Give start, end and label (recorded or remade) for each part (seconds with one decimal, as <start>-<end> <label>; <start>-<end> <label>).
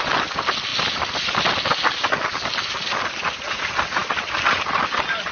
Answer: 0.0-5.3 recorded